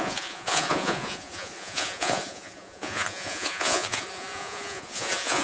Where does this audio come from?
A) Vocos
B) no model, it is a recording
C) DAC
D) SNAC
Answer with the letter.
A